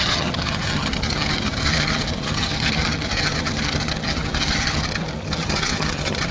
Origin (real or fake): fake